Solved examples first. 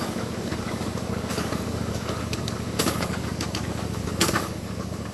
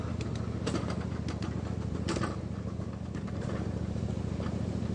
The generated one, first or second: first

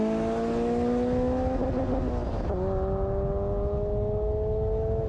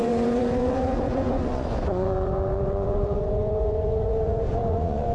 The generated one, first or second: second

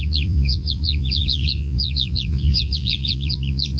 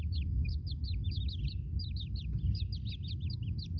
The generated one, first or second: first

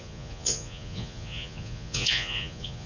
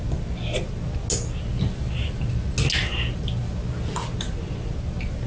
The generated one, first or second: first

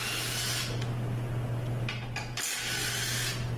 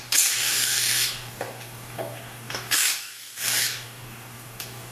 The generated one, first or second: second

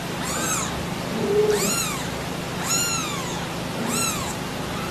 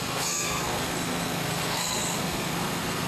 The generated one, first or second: second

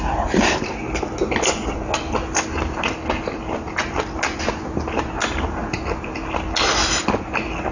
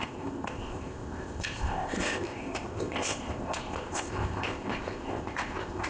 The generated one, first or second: second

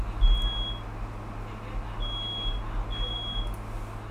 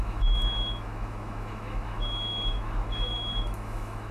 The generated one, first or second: second